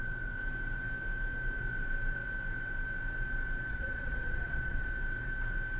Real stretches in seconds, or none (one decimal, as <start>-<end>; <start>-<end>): 0.0-3.7; 4.9-5.8